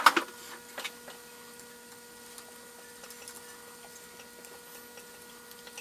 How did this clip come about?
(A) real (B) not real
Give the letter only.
A